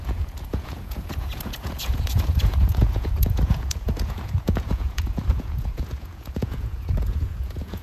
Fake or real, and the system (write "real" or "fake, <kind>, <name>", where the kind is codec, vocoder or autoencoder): fake, vocoder, Vocos